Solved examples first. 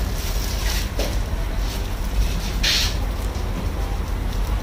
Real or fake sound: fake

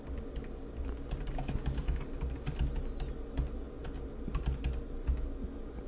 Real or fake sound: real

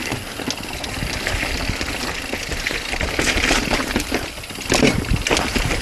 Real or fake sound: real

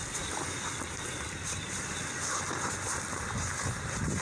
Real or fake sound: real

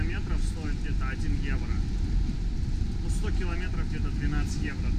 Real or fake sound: real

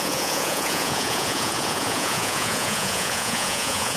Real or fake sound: fake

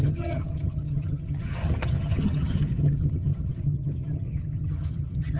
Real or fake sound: fake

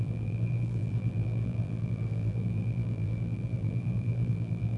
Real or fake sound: fake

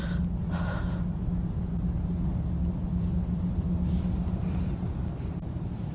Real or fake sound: real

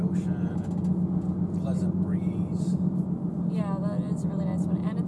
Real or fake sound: real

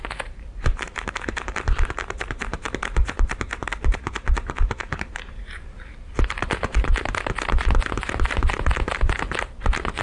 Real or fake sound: fake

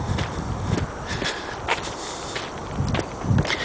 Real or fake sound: real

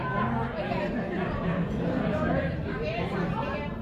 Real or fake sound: real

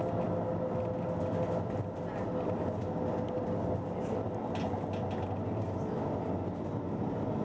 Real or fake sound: real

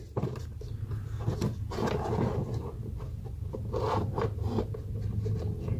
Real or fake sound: real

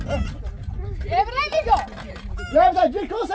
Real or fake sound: real